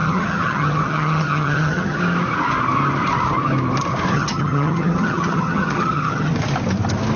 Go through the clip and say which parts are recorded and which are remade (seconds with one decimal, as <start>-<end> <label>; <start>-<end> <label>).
0.0-2.0 remade; 2.0-4.1 recorded; 4.1-6.3 remade; 6.3-7.2 recorded